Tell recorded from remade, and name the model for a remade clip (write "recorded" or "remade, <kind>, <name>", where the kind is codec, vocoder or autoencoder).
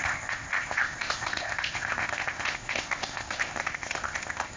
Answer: remade, codec, ZipCodec